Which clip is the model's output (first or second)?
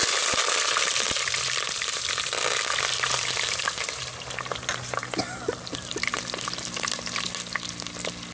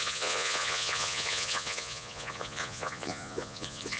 second